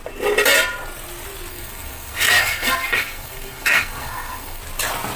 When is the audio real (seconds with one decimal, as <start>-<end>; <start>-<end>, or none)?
0.0-1.5; 4.6-5.2